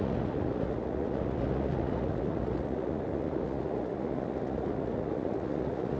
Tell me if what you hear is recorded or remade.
remade